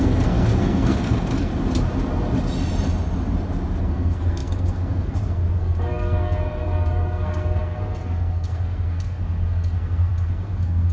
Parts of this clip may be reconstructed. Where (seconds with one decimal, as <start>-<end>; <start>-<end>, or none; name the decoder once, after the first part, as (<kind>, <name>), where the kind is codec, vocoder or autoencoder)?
0.0-1.5 (codec, SNAC); 3.8-10.9